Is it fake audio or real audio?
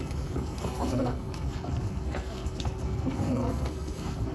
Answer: fake